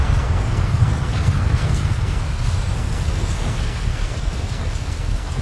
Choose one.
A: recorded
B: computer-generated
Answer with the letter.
B